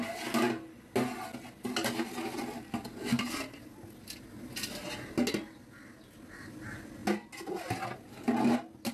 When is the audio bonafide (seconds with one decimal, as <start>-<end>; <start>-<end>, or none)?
0.0-8.9